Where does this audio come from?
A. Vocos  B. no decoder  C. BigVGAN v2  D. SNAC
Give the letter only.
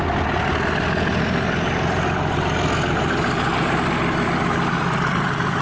B